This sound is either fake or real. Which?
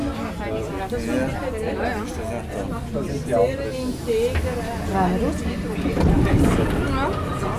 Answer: real